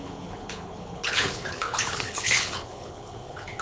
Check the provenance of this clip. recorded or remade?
remade